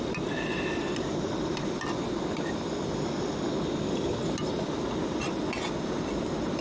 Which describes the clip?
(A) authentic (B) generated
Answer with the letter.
A